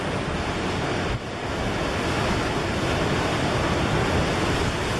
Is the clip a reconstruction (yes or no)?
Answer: no